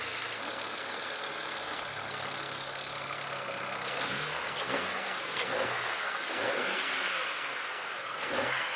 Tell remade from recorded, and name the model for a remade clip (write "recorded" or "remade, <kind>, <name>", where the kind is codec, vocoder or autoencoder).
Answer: remade, codec, SNAC